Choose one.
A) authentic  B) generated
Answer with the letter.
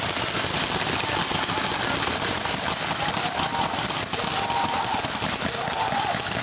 A